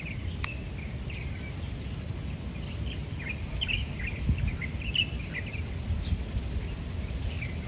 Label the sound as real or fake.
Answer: real